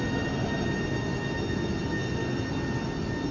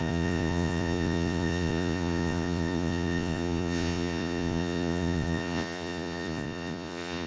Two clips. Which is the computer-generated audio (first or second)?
second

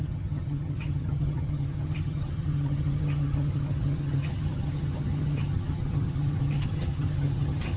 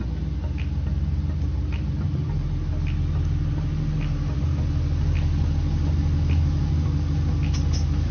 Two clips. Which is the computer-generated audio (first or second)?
first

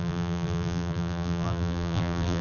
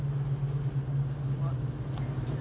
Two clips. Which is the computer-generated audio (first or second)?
first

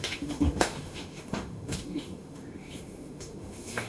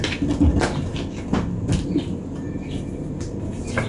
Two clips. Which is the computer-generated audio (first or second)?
first